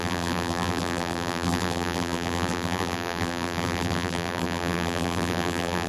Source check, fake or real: fake